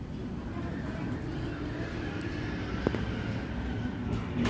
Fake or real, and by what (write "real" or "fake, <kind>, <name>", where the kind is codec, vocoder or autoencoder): real